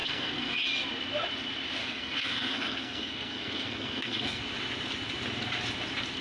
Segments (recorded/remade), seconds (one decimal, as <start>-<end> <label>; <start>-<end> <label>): 0.0-0.6 remade; 0.6-1.8 recorded; 1.8-4.4 remade; 4.4-6.2 recorded

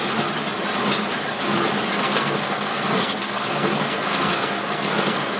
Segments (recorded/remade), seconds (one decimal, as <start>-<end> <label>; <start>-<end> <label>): 0.0-1.9 recorded; 1.9-5.4 remade

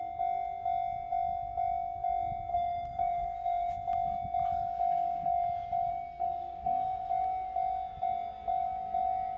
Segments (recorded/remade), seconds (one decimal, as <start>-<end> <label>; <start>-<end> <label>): 0.0-2.5 recorded; 2.5-3.7 remade; 3.7-5.9 recorded; 5.9-7.1 remade; 7.1-9.4 recorded

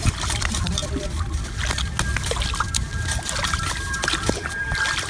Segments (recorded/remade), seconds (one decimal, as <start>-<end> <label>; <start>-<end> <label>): 0.0-0.8 remade; 0.8-3.9 recorded; 3.9-5.1 remade

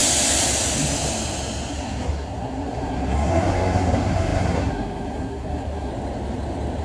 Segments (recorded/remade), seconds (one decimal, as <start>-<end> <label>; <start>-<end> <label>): 0.0-1.7 recorded; 1.7-5.9 remade; 5.9-6.8 recorded

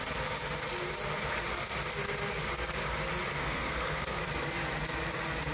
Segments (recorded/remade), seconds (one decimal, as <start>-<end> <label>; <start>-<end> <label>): 0.0-3.4 recorded; 3.4-4.2 remade; 4.2-5.5 recorded

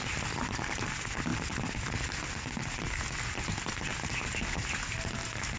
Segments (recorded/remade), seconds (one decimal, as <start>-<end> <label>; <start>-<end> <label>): 0.0-5.6 recorded